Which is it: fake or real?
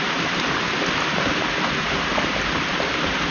fake